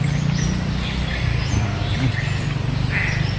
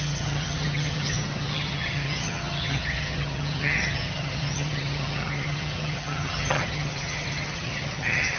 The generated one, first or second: second